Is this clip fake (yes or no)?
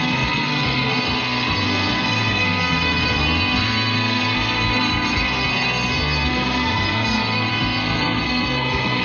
yes